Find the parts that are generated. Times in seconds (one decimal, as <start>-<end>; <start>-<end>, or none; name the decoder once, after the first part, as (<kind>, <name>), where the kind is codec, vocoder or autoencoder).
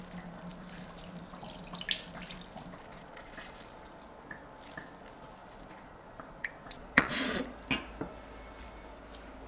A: 2.9-3.6 (vocoder, Vocos); 5.4-7.4